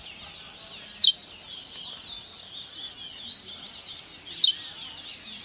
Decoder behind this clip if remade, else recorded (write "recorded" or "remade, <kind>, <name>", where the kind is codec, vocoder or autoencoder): recorded